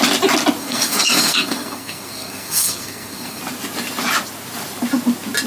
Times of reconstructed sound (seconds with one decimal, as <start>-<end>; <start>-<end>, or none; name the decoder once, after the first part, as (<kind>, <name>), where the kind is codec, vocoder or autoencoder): 0.6-3.4 (codec, SNAC)